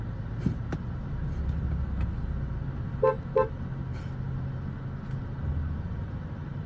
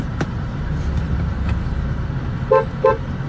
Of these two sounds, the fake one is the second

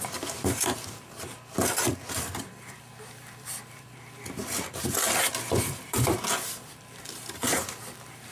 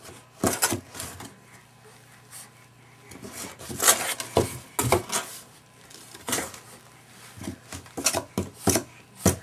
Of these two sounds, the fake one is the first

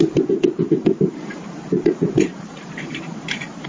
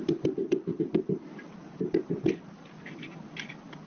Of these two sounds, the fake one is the first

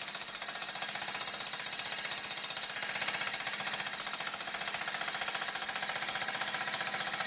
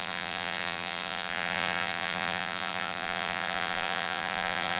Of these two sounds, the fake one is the second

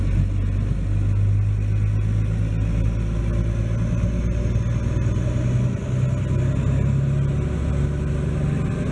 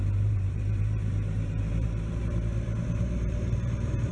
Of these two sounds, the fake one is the second